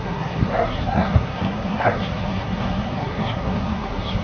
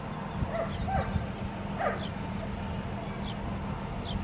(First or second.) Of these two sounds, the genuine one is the second